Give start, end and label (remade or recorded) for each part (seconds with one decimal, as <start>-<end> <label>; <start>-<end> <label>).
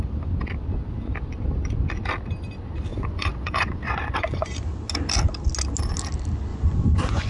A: 0.0-2.9 recorded; 2.9-4.5 remade; 4.5-6.5 recorded; 6.5-7.3 remade